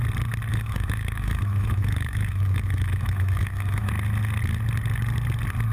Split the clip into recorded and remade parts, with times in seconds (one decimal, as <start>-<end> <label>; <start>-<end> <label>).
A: 0.0-0.5 recorded; 0.5-3.9 remade; 3.9-5.7 recorded